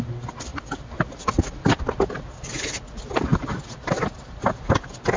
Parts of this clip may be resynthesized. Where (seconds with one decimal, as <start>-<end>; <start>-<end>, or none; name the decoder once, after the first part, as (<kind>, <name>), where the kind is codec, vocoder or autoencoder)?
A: 0.5-1.8 (vocoder, BigVGAN v2); 3.3-4.5